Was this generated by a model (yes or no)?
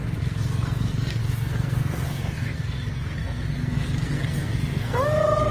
yes